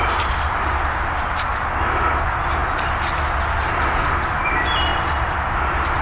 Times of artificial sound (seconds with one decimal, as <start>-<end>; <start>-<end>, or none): 4.9-5.6